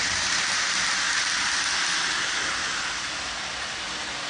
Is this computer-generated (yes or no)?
no